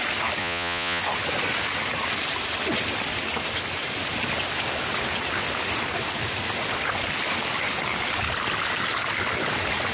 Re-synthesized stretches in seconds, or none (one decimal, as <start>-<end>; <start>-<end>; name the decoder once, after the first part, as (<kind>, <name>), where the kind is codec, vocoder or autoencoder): 0.4-1.0 (vocoder, Vocos)